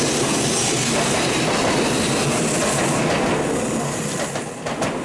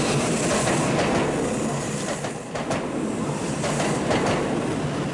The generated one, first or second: second